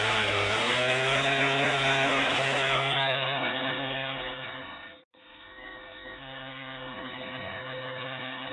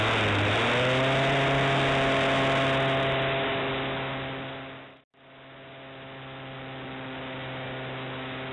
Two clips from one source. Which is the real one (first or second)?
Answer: second